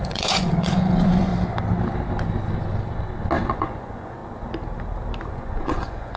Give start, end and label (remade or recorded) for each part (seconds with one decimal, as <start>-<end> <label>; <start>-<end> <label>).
0.0-1.3 remade; 1.3-3.5 recorded; 3.5-4.2 remade; 4.2-5.3 recorded; 5.3-6.2 remade